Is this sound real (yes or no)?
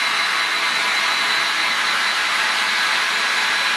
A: yes